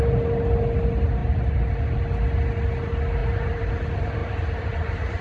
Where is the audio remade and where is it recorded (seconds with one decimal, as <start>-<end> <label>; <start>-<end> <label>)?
0.0-3.2 recorded; 3.2-3.7 remade; 3.7-4.2 recorded; 4.2-5.2 remade